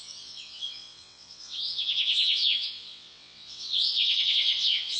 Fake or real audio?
fake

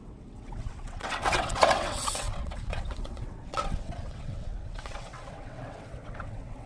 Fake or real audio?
fake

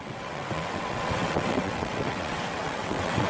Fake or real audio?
fake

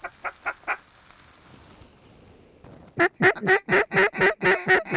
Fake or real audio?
real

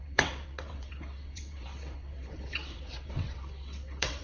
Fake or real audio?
fake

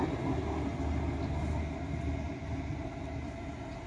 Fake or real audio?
real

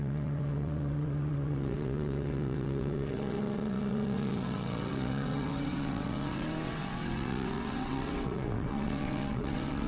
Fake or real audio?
fake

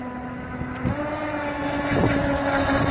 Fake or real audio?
real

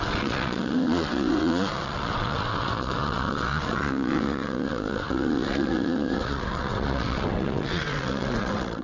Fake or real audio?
fake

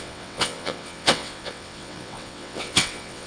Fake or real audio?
fake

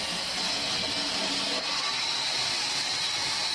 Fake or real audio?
real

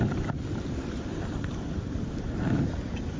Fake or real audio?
real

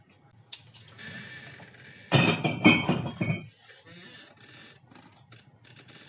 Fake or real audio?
real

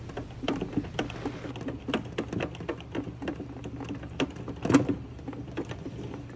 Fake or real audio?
real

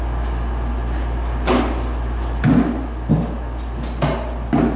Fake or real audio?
real